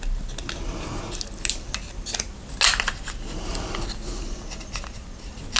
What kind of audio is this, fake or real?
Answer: real